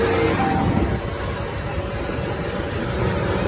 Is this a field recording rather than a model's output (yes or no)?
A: yes